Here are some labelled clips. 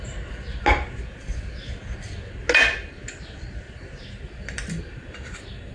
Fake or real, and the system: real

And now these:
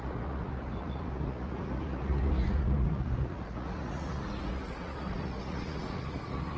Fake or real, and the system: fake, vocoder, Vocos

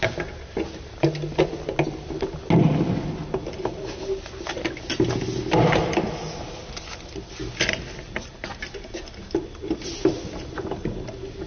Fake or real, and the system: real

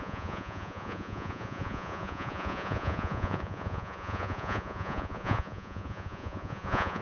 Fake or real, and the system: fake, vocoder, Vocos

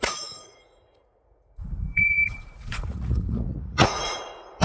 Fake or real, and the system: fake, vocoder, Vocos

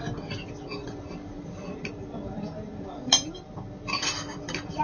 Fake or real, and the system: real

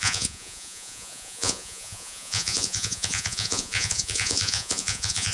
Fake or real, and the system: fake, vocoder, Vocos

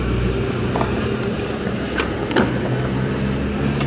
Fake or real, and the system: real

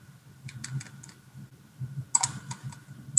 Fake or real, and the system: real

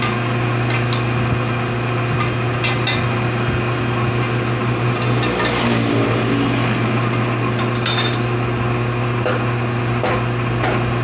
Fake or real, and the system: real